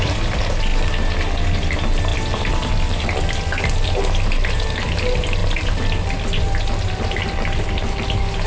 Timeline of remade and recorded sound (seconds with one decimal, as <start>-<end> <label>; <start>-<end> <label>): 0.0-2.1 recorded; 2.1-2.7 remade; 2.7-5.4 recorded; 5.4-7.2 remade; 7.2-8.5 recorded

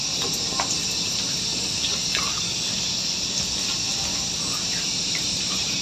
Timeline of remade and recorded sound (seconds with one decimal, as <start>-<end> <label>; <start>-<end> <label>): 0.0-1.5 remade; 1.5-4.7 recorded; 4.7-5.8 remade

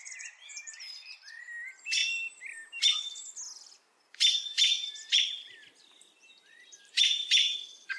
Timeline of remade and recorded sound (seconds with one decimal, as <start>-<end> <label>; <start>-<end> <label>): 0.0-2.0 remade; 2.0-6.8 recorded; 6.8-8.0 remade

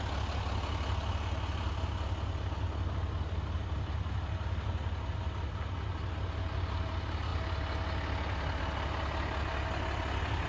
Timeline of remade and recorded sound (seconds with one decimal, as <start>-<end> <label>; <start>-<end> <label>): 0.0-10.5 recorded